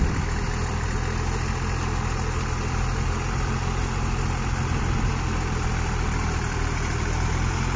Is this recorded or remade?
recorded